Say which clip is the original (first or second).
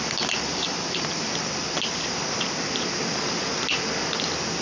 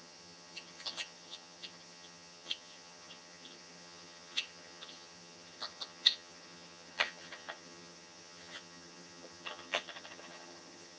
first